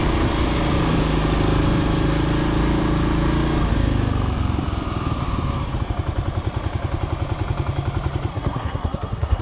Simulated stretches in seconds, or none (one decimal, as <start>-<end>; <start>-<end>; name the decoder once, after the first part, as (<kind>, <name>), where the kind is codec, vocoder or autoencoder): 8.3-9.4 (codec, SNAC)